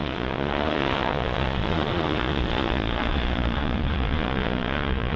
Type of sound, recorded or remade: remade